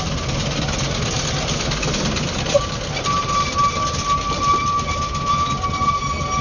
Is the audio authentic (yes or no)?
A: yes